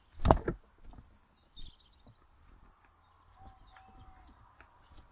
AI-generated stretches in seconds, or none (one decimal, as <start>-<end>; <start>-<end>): none